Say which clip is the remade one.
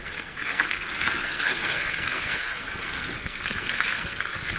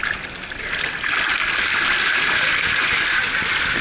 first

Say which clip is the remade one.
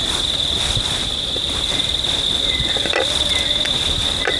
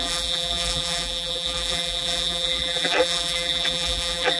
second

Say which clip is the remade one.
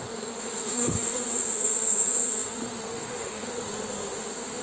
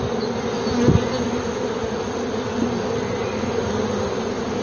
first